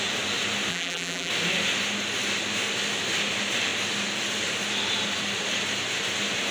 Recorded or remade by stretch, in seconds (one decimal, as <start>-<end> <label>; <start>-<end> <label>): 0.0-0.7 recorded; 0.7-1.3 remade; 1.3-6.5 recorded